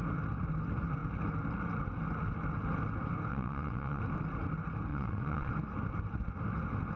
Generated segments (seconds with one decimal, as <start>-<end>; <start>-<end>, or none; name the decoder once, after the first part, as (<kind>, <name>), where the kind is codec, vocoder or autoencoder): 3.3-4.0 (vocoder, WaveNeXt); 4.9-5.5